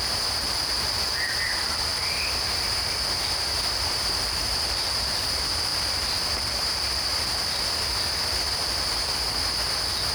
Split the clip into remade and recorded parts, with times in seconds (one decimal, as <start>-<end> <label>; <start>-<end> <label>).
0.0-1.9 recorded; 1.9-2.9 remade; 2.9-5.7 recorded; 5.7-6.7 remade; 6.7-10.1 recorded